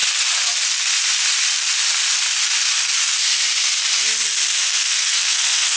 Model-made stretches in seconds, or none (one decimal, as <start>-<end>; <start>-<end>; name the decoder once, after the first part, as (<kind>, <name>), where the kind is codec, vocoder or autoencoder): 4.8-5.8 (codec, SNAC)